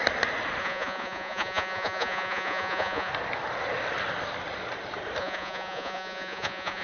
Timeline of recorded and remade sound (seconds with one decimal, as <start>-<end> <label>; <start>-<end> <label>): 0.0-0.6 recorded; 0.6-3.1 remade; 3.1-5.2 recorded; 5.2-6.8 remade